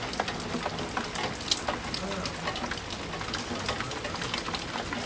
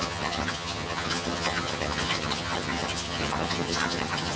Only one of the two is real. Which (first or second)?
first